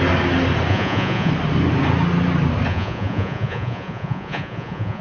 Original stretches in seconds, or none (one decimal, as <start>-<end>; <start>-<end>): 0.0-0.7; 1.3-2.7